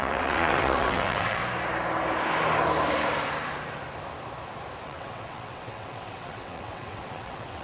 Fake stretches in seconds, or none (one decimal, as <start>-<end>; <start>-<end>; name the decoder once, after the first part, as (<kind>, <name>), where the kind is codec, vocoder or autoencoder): 0.0-1.4 (vocoder, WaveNeXt); 4.8-7.6